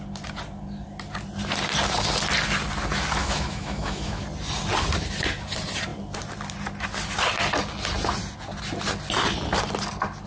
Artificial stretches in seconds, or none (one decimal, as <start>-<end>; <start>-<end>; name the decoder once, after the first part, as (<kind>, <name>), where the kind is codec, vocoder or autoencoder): 3.2-4.2 (autoencoder, DAC-VAE)